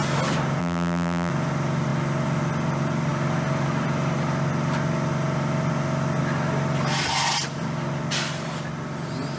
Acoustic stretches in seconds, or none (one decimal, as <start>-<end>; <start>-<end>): 0.0-0.6; 1.3-9.4

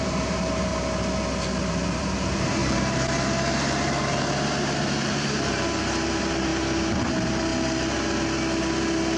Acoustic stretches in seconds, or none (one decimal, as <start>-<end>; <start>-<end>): 0.7-2.0; 7.5-9.2